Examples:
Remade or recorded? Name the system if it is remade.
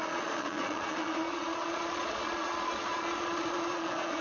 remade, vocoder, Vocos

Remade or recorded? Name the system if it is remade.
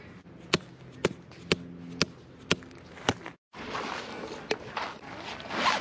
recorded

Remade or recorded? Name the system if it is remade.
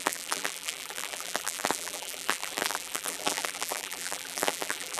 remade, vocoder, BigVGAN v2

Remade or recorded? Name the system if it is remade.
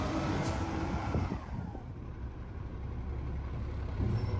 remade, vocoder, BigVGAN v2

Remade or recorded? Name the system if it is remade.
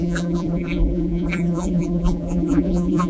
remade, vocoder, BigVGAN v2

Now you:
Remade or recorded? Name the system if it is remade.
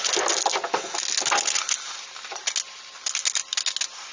recorded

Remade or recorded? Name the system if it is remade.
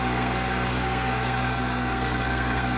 remade, codec, SNAC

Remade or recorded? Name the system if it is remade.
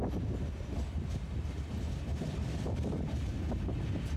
recorded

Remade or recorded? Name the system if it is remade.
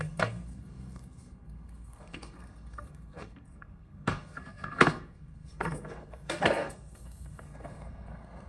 remade, codec, SNAC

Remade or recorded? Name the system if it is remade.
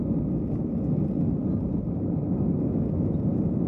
recorded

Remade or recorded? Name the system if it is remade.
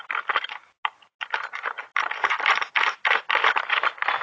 recorded